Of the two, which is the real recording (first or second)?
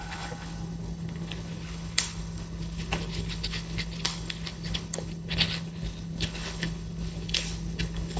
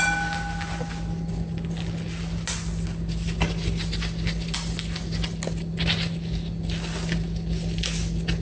second